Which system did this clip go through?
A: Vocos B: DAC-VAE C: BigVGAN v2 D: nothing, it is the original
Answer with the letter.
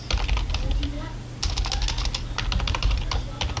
D